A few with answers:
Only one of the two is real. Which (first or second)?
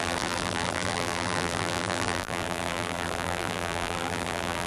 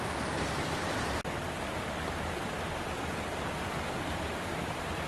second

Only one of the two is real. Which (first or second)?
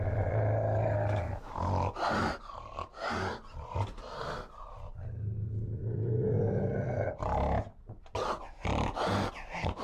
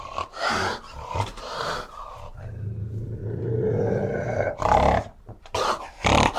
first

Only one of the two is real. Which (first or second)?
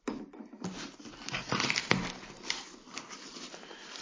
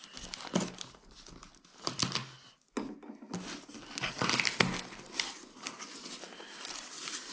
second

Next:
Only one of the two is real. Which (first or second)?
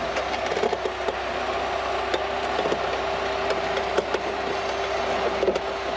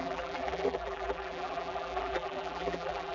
first